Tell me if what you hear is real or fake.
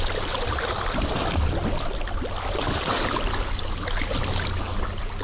real